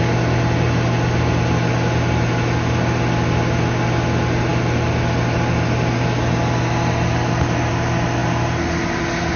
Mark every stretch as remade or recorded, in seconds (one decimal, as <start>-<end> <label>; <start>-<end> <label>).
0.0-4.5 recorded; 4.5-7.7 remade; 7.7-9.4 recorded